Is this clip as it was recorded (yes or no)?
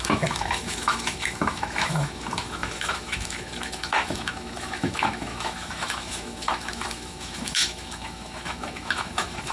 no